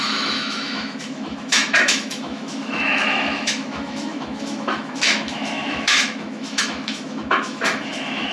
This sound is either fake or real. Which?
fake